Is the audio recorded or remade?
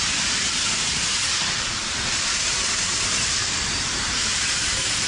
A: remade